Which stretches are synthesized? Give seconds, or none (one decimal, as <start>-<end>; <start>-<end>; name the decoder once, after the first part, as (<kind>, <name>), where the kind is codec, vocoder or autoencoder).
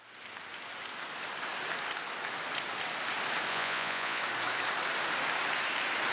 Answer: 3.5-4.2 (vocoder, Vocos)